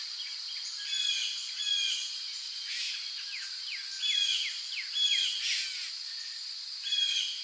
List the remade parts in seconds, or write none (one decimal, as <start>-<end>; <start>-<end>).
none